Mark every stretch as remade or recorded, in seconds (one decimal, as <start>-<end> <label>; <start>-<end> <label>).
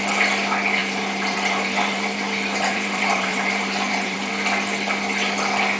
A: 0.0-0.8 recorded; 0.8-4.3 remade; 4.3-5.8 recorded